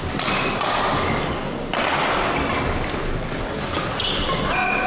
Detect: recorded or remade recorded